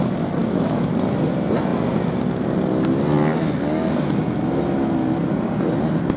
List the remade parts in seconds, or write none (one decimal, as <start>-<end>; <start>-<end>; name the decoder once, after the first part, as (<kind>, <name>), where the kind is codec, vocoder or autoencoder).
0.4-0.9 (autoencoder, DAC-VAE)